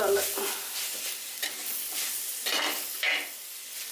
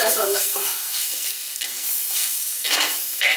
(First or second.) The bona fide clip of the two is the first